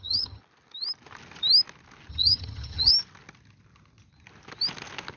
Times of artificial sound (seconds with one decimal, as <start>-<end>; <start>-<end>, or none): 0.0-0.4; 2.1-2.9